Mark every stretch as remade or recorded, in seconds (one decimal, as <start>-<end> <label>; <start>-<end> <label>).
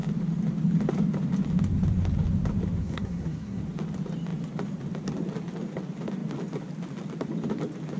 0.0-2.8 recorded; 2.8-3.6 remade; 3.6-8.0 recorded